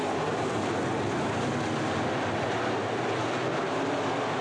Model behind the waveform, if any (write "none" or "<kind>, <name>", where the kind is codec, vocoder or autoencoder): none